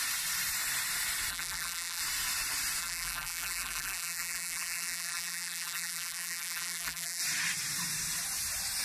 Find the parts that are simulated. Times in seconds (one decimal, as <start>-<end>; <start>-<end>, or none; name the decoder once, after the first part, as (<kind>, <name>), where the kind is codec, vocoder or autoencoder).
1.3-2.0 (vocoder, BigVGAN v2); 2.8-7.2